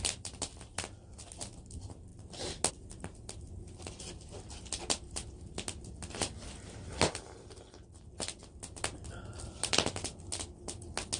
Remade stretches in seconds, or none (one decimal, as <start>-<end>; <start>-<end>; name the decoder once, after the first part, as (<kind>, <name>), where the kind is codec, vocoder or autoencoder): none